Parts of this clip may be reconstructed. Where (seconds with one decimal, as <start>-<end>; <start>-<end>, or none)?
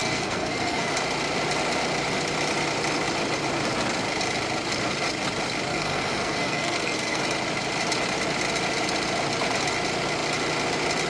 0.0-0.9; 5.7-7.2